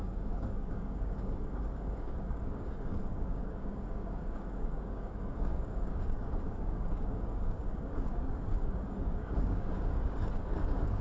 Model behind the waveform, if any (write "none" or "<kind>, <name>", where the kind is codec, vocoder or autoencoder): codec, DAC